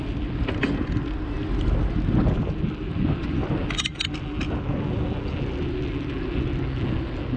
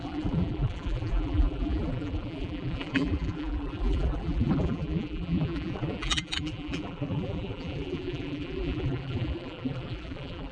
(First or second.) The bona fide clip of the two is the first